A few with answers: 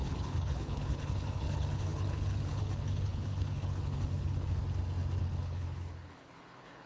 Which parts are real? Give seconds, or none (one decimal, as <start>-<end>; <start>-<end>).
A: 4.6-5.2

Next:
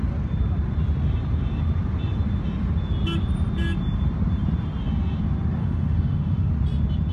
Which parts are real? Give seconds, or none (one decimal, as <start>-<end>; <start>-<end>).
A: 0.0-5.6; 6.5-7.1

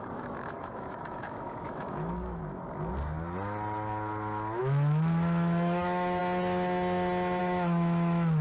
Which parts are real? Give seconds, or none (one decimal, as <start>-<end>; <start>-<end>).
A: 2.4-4.6; 6.2-7.4

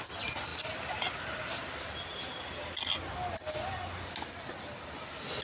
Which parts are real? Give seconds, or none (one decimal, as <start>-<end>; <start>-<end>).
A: 0.0-5.4